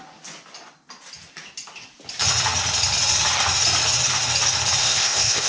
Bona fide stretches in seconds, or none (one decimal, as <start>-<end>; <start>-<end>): 0.0-4.8